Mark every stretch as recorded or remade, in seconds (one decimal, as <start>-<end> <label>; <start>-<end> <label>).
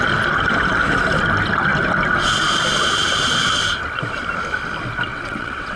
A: 0.0-5.1 recorded; 5.1-5.8 remade